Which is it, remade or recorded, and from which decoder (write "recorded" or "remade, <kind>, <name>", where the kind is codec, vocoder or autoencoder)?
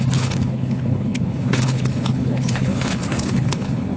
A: remade, codec, HILCodec